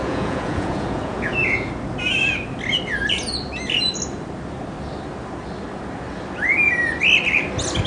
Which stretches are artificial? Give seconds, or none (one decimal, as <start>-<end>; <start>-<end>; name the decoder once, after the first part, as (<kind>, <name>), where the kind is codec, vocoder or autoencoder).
0.0-1.7 (vocoder, Vocos)